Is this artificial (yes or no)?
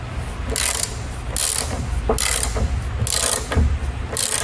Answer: no